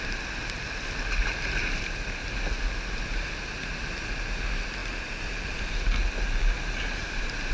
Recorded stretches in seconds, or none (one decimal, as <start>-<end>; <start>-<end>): 0.0-7.5